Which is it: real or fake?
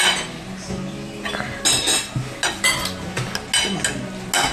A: real